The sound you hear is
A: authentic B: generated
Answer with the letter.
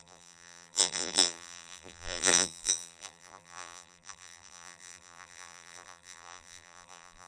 B